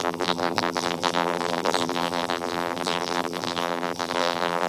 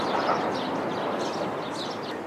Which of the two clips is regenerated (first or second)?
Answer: first